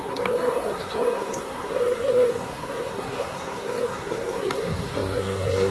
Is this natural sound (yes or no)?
no